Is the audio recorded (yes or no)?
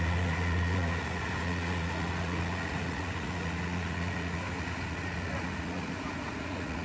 no